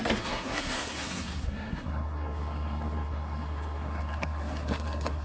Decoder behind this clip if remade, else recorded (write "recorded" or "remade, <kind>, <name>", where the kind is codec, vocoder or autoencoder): remade, codec, SNAC